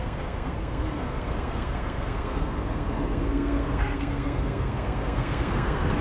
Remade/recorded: remade